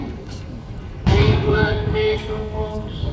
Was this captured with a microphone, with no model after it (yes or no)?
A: no